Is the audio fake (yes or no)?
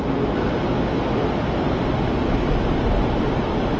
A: no